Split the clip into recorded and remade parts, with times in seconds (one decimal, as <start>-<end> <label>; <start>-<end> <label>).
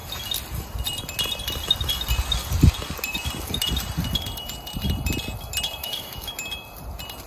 0.0-5.8 recorded; 5.8-6.3 remade; 6.3-7.3 recorded